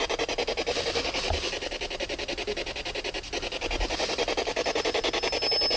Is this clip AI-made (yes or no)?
no